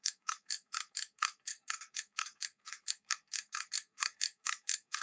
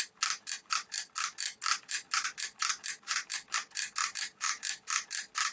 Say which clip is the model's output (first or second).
first